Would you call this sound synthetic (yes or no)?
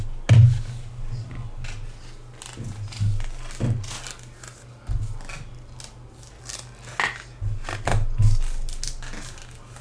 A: no